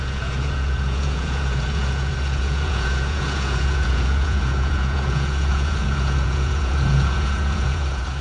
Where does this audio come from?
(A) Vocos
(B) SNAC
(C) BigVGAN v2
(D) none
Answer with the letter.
A